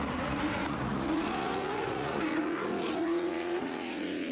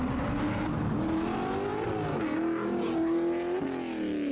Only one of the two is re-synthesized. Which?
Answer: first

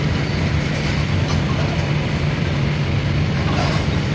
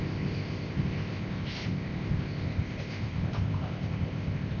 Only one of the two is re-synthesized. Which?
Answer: second